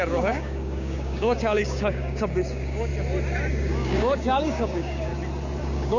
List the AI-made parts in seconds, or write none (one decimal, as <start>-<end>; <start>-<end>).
0.0-2.9; 3.5-5.1; 5.6-6.0